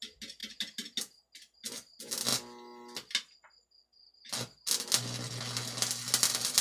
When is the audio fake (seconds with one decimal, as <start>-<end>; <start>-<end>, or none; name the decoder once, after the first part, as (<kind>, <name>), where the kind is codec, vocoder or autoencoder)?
none

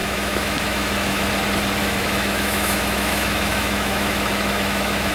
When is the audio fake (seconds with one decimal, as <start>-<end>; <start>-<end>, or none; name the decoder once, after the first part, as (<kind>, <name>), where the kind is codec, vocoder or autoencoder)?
0.0-1.3 (autoencoder, DAC-VAE); 1.8-5.1